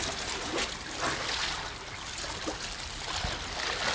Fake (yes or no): no